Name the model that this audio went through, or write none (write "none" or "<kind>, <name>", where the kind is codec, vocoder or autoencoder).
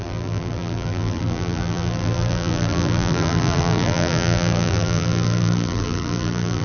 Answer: vocoder, BigVGAN v2